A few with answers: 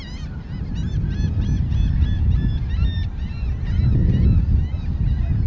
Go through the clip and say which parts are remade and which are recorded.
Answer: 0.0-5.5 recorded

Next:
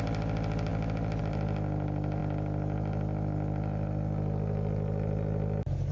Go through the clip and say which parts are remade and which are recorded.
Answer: 0.0-5.9 recorded

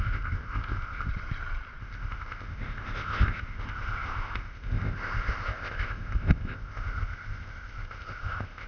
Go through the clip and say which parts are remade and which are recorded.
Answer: 0.0-1.1 remade; 1.1-1.8 recorded; 1.8-8.7 remade

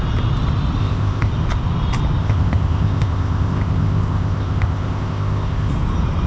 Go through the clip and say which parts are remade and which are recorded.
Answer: 0.0-0.8 recorded; 0.8-1.3 remade; 1.3-2.2 recorded; 2.2-5.7 remade; 5.7-6.3 recorded

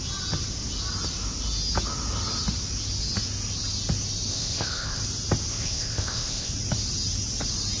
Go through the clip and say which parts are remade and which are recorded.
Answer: 0.0-4.3 recorded; 4.3-5.0 remade; 5.0-5.5 recorded; 5.5-6.5 remade; 6.5-7.8 recorded

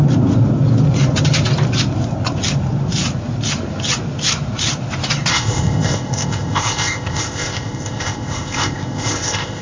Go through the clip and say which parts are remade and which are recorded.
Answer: 0.0-5.3 recorded; 5.3-9.6 remade